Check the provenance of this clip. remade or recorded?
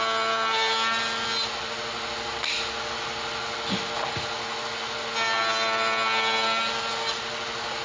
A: recorded